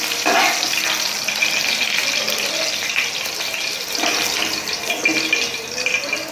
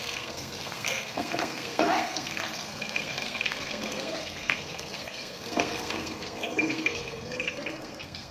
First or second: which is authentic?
first